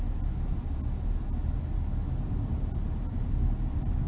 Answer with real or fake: real